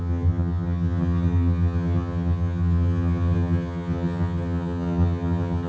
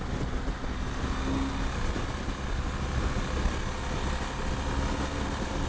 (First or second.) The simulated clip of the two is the first